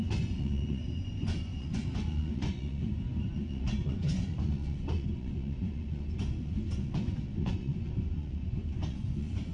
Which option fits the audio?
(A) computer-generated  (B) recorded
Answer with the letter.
A